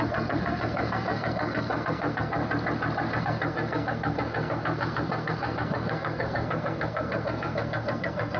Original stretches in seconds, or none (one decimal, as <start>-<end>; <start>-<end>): 2.4-3.2

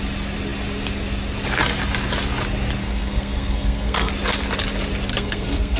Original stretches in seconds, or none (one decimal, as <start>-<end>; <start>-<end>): 0.0-2.8; 4.1-5.1

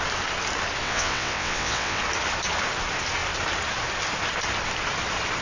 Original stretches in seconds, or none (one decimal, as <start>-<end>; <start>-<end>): 0.0-0.8; 2.0-5.4

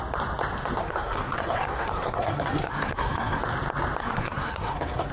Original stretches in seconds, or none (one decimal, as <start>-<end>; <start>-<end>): 0.0-0.8; 3.4-4.0

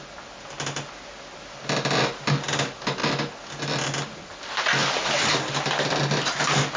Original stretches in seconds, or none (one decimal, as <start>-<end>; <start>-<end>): 0.0-6.8

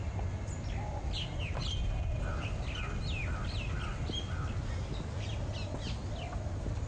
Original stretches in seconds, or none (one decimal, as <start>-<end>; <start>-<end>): 0.0-6.9

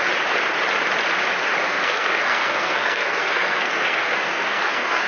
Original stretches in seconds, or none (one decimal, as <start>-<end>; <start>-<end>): 0.0-1.7

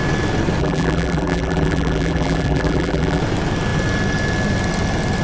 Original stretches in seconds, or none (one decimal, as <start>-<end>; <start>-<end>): 0.0-0.6; 3.2-5.2